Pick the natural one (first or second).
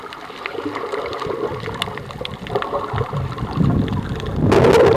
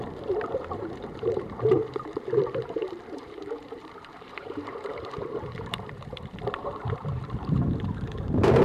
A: first